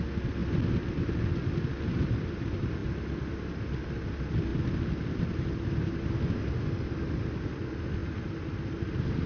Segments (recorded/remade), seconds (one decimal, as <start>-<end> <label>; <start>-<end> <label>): 0.0-9.3 recorded